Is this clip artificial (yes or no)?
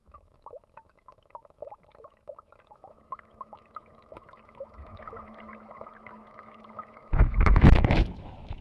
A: yes